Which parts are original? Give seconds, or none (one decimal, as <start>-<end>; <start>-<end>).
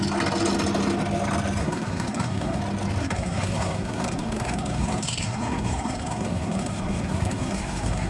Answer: 0.0-1.6; 2.6-3.0